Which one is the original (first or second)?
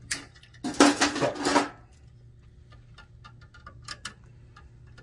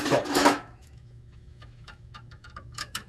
first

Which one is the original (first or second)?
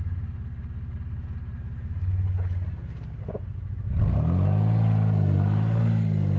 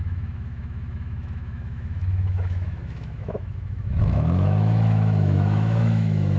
first